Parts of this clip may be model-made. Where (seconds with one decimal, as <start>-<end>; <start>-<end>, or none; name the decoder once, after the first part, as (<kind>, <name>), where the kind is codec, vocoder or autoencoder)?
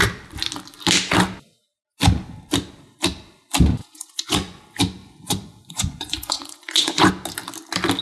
3.8-4.6 (vocoder, Vocos); 5.0-7.1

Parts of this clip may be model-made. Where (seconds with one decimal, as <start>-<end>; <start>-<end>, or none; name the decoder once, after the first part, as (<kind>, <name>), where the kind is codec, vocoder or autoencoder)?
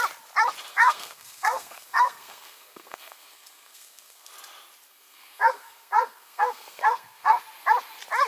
0.7-4.3 (codec, SNAC); 4.9-7.4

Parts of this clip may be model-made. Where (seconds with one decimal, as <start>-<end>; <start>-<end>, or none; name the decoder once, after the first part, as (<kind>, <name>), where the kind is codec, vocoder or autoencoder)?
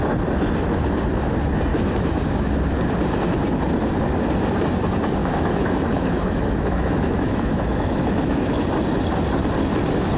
1.7-2.5 (autoencoder, DAC-VAE); 5.2-8.6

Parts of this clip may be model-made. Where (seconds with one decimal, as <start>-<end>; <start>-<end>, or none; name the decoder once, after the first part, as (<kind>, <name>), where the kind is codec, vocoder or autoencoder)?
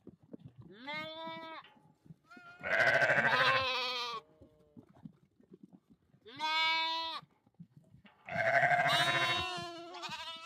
7.4-8.8 (codec, SNAC)